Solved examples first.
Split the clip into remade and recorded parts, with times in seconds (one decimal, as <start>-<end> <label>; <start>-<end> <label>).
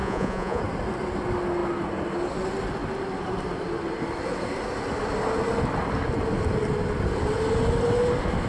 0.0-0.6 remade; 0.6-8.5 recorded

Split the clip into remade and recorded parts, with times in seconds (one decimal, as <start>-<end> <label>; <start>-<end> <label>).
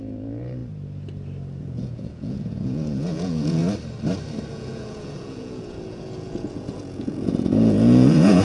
0.0-0.6 remade; 0.6-1.6 recorded; 1.6-3.6 remade; 3.6-4.5 recorded; 4.5-8.4 remade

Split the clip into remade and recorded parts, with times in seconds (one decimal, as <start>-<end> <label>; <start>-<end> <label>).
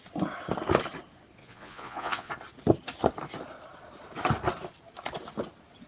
0.0-1.4 recorded; 1.4-2.3 remade; 2.3-5.9 recorded